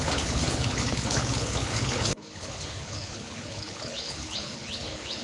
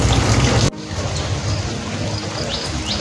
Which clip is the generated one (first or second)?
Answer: first